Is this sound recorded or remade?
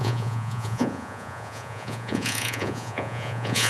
remade